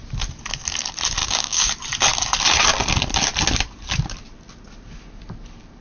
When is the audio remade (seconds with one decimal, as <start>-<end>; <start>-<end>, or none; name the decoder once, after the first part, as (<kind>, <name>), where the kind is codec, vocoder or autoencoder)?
1.2-1.7 (codec, DAC)